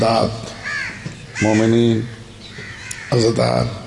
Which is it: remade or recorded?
recorded